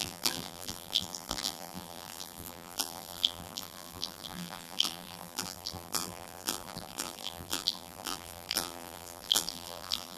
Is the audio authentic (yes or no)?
no